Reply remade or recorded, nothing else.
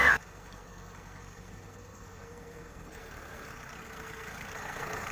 remade